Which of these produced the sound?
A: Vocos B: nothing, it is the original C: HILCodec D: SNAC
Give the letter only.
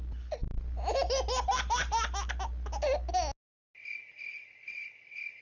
B